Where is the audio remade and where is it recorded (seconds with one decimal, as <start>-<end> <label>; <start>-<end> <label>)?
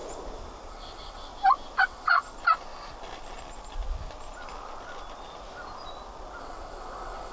0.0-0.7 recorded; 0.7-1.3 remade; 1.3-1.8 recorded; 1.8-2.3 remade; 2.3-6.4 recorded; 6.4-7.3 remade